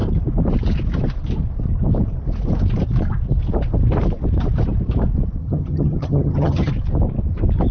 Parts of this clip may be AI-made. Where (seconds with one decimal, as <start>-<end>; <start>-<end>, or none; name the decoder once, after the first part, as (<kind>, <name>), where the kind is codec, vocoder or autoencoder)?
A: 5.4-6.7 (vocoder, HiFi-GAN)